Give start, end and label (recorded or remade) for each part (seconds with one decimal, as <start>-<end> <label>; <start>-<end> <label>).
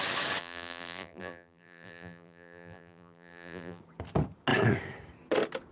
0.0-0.4 recorded; 0.4-3.8 remade; 3.8-5.7 recorded